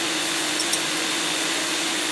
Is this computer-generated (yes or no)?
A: yes